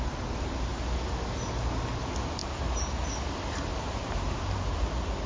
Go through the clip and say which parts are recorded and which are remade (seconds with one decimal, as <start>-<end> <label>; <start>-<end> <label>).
0.0-2.4 recorded; 2.4-3.0 remade; 3.0-3.7 recorded; 3.7-4.4 remade; 4.4-5.3 recorded